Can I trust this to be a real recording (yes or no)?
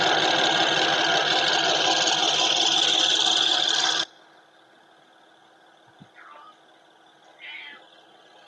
yes